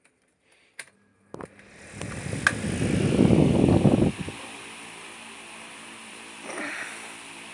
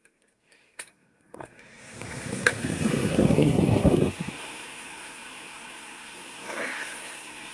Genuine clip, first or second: first